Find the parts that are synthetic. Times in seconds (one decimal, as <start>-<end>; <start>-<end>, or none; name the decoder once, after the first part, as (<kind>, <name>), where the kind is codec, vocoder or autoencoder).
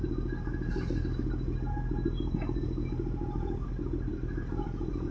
none